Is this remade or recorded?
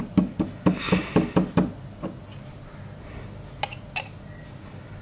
recorded